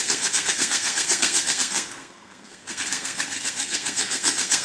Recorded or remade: remade